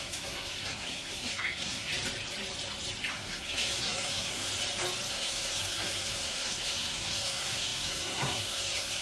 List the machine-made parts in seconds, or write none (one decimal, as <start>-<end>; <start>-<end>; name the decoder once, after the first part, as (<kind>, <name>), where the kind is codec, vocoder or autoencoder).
0.0-1.9 (codec, SNAC); 3.1-4.5; 5.1-9.0